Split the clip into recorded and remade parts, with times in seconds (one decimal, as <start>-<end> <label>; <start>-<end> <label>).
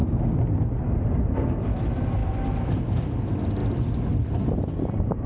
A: 0.0-5.3 recorded